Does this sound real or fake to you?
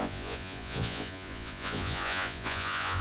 fake